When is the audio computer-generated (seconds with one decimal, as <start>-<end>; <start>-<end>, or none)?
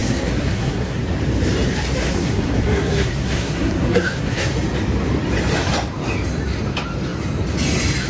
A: 0.0-1.0; 2.0-4.5